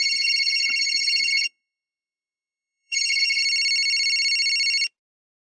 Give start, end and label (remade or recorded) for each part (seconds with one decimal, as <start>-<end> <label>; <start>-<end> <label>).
0.0-3.4 remade; 3.4-5.6 recorded